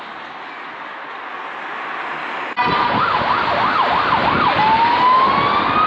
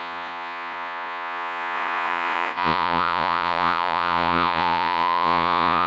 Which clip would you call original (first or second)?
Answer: first